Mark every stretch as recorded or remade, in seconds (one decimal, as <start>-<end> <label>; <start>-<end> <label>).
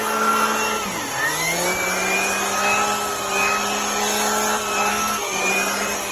0.0-4.9 recorded; 4.9-5.4 remade; 5.4-6.1 recorded